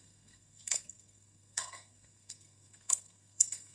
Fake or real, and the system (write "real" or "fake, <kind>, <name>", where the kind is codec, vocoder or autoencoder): fake, codec, SNAC